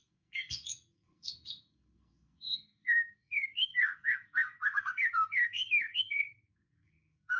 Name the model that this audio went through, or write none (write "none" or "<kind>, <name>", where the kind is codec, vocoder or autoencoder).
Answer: codec, SNAC